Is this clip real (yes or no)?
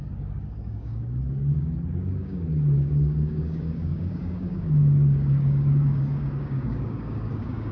no